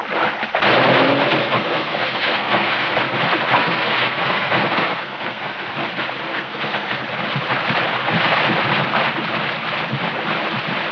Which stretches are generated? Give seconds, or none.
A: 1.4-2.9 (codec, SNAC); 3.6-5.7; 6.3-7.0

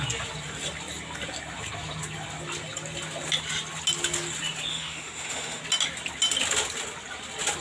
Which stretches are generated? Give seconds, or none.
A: 4.7-5.6 (autoencoder, DAC-VAE)

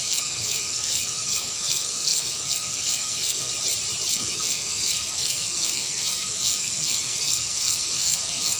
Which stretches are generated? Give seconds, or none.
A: 0.0-3.5 (codec, SNAC); 4.1-8.6

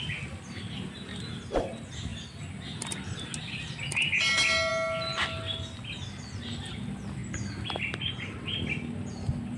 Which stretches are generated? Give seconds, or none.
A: none

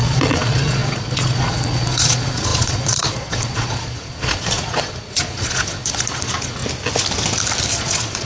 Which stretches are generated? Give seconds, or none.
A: 0.0-6.6 (vocoder, Vocos); 7.7-8.3